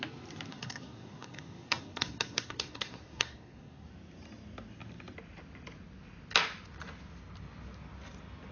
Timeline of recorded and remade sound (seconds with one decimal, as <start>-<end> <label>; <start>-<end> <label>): 0.0-0.5 recorded; 0.5-3.9 remade; 3.9-8.5 recorded